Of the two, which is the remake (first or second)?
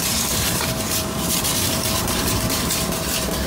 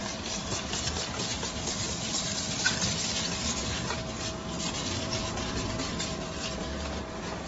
first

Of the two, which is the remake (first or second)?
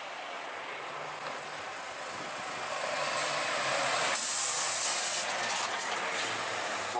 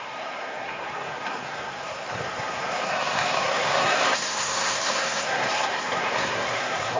second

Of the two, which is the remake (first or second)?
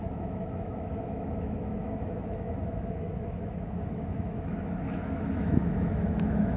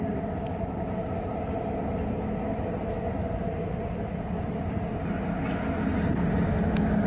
first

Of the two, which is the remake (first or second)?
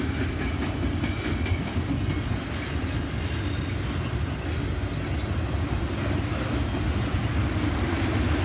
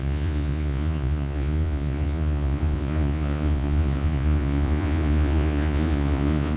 second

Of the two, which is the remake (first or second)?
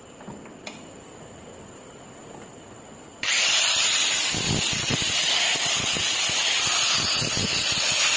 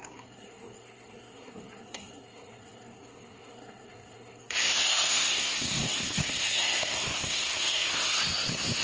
second